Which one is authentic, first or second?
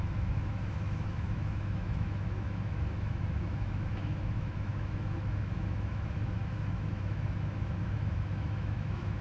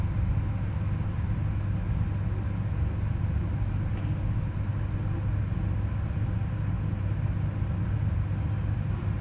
second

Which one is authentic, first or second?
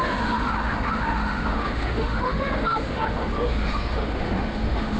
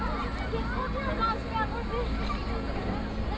second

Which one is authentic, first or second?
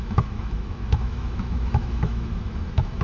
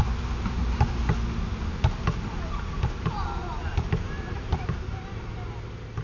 second